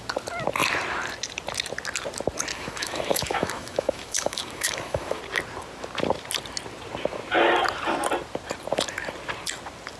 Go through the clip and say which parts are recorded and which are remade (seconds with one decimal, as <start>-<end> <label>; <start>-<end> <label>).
0.0-2.5 recorded; 2.5-5.2 remade; 5.2-10.0 recorded